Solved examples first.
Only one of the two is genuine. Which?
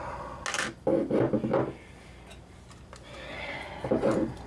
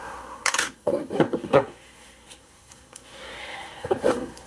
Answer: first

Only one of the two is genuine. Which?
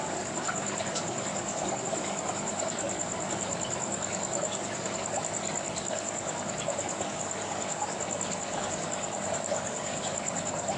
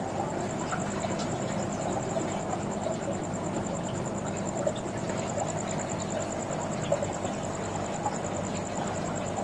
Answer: second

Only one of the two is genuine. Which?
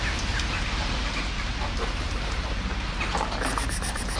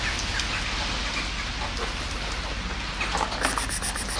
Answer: second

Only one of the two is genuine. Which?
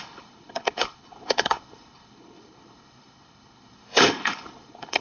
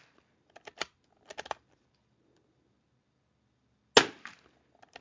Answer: second